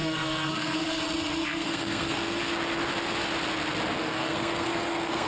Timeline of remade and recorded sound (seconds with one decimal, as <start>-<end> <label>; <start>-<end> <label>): 0.0-1.0 remade; 1.0-1.4 recorded; 1.4-2.4 remade; 2.4-4.0 recorded; 4.0-5.3 remade